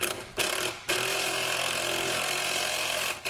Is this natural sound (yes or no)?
yes